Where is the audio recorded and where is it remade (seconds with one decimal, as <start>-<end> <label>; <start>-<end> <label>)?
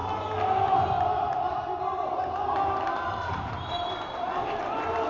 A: 0.0-3.1 recorded; 3.1-4.1 remade; 4.1-5.1 recorded